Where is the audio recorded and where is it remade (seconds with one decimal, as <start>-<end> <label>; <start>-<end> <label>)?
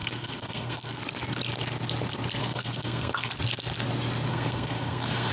0.0-1.0 remade; 1.0-2.4 recorded; 2.4-3.3 remade; 3.3-4.3 recorded; 4.3-5.3 remade